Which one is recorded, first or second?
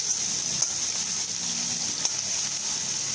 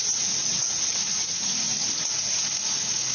first